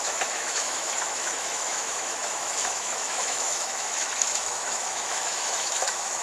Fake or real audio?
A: fake